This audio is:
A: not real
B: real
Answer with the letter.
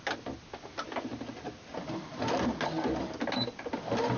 B